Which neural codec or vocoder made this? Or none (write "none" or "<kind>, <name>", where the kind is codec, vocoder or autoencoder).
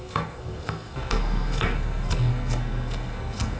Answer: codec, SNAC